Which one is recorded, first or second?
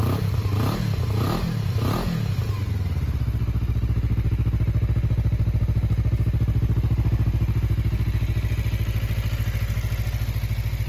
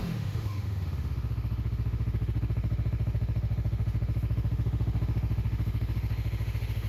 first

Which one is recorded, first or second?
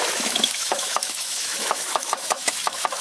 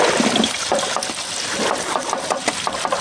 second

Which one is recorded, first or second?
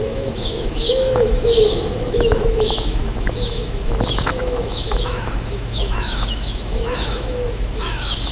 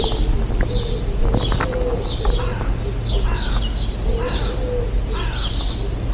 second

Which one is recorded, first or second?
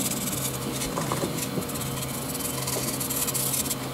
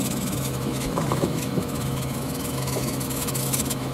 first